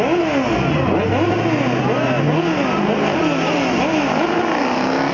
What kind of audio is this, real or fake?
real